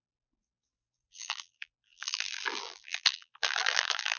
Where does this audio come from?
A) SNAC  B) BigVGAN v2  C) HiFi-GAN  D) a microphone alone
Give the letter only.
B